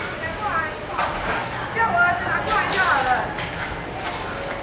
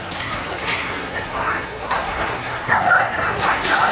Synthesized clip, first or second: second